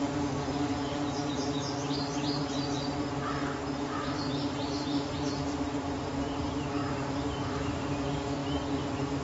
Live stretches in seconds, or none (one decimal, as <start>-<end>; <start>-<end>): 0.0-9.2